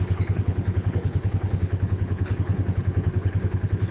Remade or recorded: remade